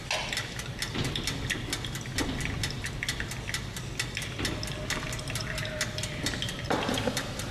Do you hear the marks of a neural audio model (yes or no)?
no